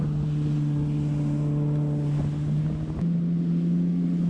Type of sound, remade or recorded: recorded